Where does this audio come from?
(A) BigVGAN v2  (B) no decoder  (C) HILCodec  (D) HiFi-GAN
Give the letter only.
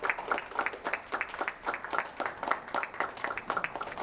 B